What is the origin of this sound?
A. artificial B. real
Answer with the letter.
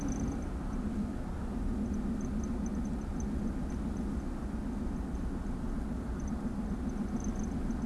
B